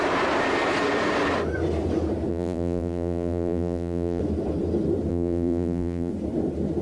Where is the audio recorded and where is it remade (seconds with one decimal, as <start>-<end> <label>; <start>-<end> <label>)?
0.0-2.3 recorded; 2.3-4.2 remade; 4.2-5.1 recorded; 5.1-6.1 remade; 6.1-6.8 recorded